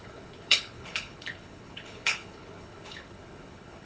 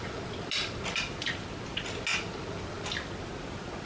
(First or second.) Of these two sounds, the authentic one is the second